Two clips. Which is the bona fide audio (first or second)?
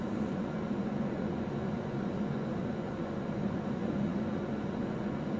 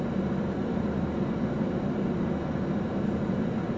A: second